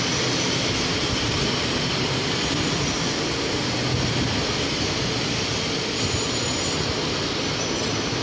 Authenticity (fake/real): real